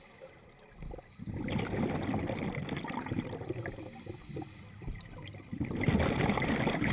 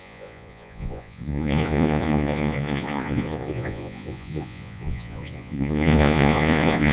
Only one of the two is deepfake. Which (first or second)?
second